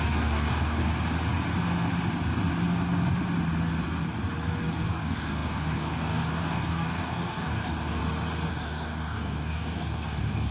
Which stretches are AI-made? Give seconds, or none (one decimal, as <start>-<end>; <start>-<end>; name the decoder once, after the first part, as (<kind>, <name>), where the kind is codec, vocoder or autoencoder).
0.0-0.8 (codec, DAC); 4.8-8.0; 8.5-10.5